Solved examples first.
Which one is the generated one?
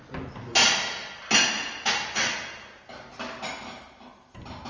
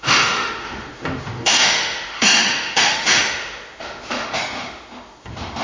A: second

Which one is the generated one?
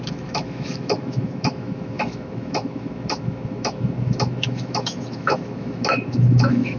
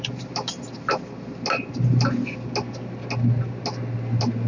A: first